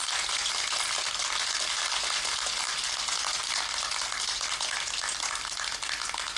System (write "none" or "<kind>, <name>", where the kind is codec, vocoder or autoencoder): none